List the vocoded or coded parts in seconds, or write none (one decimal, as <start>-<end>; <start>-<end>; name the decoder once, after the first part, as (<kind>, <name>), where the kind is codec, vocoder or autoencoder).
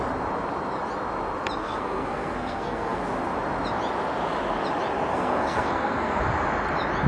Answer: 1.6-3.0 (codec, SNAC); 5.1-6.2